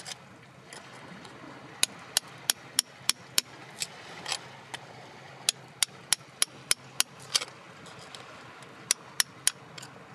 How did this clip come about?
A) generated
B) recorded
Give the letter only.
B